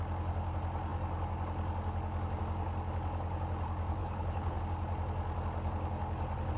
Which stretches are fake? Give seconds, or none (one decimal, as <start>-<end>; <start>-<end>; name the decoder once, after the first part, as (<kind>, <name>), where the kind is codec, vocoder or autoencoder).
4.0-4.6 (codec, HILCodec)